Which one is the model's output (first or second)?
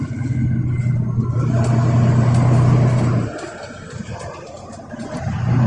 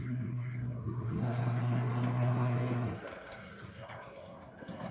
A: second